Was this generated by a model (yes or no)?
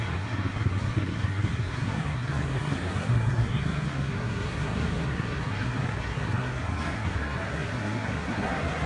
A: yes